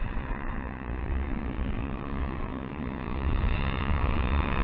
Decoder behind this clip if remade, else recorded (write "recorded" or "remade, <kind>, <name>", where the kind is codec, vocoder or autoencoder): remade, vocoder, WaveNeXt